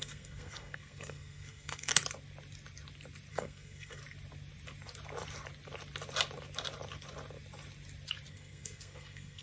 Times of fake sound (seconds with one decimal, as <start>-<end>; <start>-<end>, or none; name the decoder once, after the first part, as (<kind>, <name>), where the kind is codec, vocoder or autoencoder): 0.0-1.9 (codec, SNAC); 3.3-4.0; 8.3-9.4